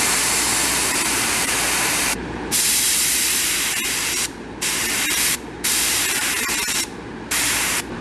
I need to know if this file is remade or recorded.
remade